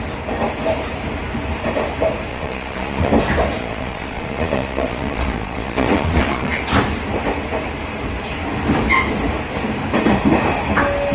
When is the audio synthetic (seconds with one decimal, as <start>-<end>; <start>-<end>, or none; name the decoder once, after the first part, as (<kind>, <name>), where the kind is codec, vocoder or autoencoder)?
2.3-3.1 (vocoder, Vocos); 3.6-6.6